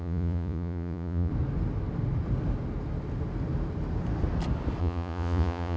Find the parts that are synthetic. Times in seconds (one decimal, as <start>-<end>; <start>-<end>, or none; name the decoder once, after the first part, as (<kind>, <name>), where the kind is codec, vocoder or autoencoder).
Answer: 0.0-1.3 (vocoder, Vocos); 4.8-5.8